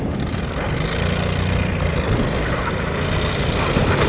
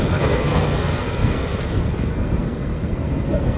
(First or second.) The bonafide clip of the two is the first